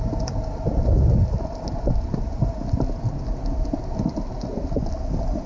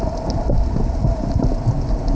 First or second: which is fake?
first